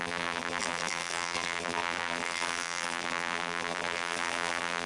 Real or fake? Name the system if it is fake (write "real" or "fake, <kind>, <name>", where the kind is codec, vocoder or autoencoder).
fake, vocoder, BigVGAN v2